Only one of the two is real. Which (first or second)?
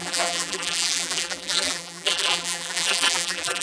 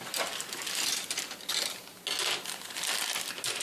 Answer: second